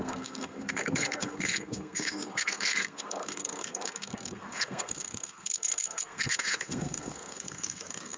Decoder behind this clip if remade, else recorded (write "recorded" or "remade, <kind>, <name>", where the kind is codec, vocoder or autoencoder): remade, codec, SNAC